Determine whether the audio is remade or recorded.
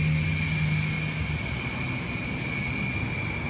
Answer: recorded